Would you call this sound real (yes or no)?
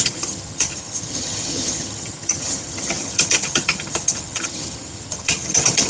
no